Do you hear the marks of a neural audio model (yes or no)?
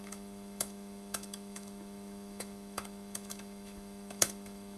yes